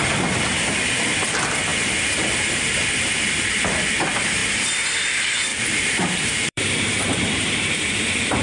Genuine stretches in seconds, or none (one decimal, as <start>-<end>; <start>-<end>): 0.0-5.5; 7.7-8.4